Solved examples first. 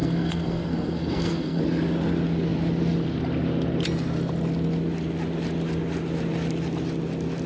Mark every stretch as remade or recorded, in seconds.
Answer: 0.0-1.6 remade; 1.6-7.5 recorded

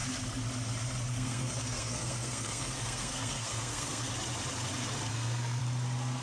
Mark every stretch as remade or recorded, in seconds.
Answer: 0.0-1.1 recorded; 1.1-4.1 remade; 4.1-5.1 recorded; 5.1-5.6 remade; 5.6-6.2 recorded

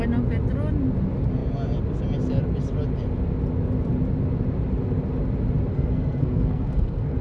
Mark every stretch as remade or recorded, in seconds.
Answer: 0.0-5.7 recorded; 5.7-7.2 remade

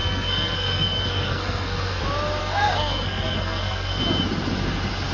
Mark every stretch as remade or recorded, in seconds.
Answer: 0.0-2.0 remade; 2.0-2.4 recorded; 2.4-4.0 remade; 4.0-5.1 recorded

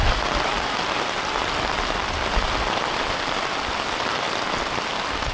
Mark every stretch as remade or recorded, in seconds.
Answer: 0.0-5.3 recorded